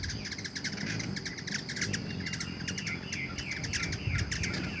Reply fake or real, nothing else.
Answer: real